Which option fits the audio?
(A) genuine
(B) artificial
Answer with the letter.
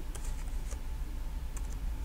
A